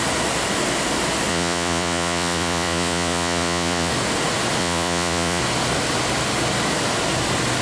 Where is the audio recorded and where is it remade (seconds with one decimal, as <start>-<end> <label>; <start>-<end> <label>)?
0.0-1.3 recorded; 1.3-3.9 remade; 3.9-4.6 recorded; 4.6-5.4 remade; 5.4-7.6 recorded